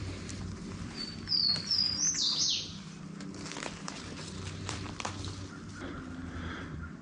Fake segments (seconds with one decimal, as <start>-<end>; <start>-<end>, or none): 0.0-1.4; 3.0-7.0